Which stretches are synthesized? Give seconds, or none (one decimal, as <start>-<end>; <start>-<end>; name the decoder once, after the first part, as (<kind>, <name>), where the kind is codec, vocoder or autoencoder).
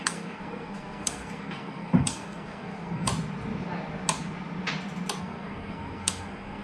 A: 0.0-3.1 (codec, SNAC); 5.2-6.6